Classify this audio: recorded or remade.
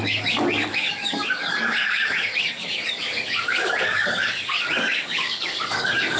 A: remade